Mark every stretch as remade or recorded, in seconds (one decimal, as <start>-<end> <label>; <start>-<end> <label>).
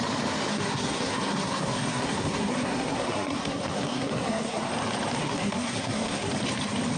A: 0.0-0.5 recorded; 0.5-4.7 remade; 4.7-5.2 recorded; 5.2-6.3 remade; 6.3-7.0 recorded